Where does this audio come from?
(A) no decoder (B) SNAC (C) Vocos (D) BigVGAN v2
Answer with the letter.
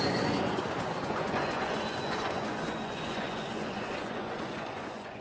C